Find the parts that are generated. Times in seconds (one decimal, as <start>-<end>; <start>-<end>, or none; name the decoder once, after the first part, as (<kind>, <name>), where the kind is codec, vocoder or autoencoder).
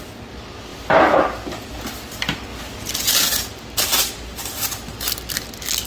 none